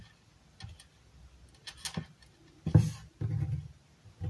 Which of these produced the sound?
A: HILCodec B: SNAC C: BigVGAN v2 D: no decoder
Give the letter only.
D